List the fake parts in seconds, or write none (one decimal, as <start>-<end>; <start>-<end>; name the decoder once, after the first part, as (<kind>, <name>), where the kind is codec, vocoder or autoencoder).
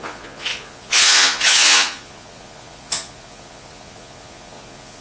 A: 0.0-5.0 (vocoder, Vocos)